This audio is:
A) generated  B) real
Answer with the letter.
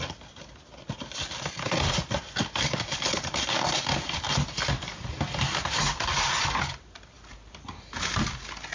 B